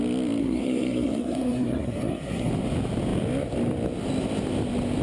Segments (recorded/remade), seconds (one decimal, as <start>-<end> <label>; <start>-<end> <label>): 0.0-0.4 recorded; 0.4-2.5 remade; 2.5-5.0 recorded